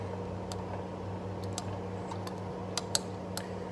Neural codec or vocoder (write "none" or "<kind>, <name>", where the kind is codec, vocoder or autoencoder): none